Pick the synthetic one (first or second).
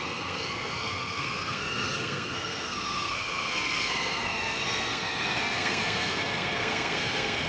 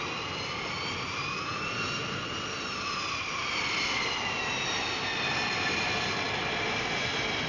first